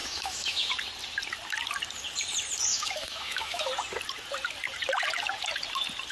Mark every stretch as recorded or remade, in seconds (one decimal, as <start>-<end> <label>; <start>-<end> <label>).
0.0-0.7 remade; 0.7-2.7 recorded; 2.7-3.7 remade; 3.7-6.1 recorded